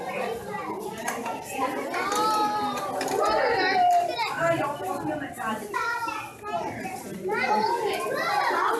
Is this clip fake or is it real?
real